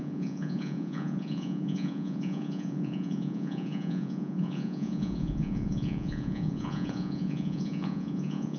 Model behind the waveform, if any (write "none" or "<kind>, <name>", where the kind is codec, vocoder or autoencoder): vocoder, Vocos